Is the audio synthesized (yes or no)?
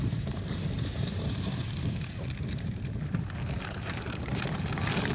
yes